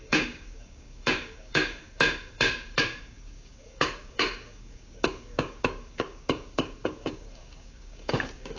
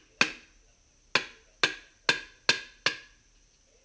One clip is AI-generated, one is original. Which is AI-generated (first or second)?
first